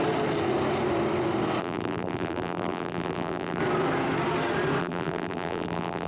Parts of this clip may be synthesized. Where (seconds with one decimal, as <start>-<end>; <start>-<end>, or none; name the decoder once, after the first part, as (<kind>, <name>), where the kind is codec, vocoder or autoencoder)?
1.6-3.6 (vocoder, BigVGAN v2); 4.8-6.1